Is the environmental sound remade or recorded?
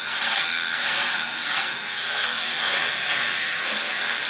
remade